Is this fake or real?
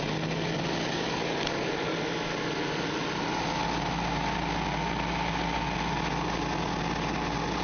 real